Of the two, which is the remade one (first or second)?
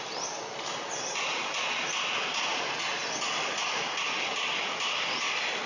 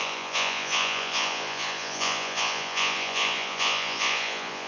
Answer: second